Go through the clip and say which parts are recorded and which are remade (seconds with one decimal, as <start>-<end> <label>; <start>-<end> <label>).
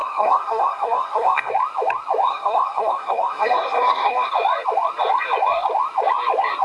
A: 0.0-1.5 remade; 1.5-2.3 recorded; 2.3-4.3 remade; 4.3-6.6 recorded